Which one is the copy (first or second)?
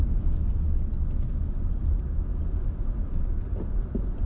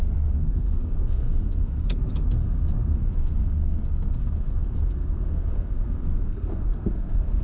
second